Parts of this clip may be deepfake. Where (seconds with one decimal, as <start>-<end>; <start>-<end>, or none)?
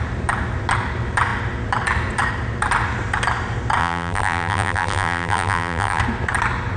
3.8-6.0